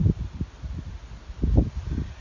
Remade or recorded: recorded